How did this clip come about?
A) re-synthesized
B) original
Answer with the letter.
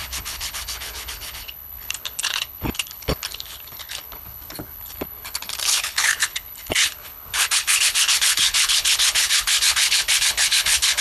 A